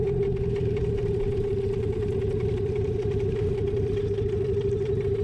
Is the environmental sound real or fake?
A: fake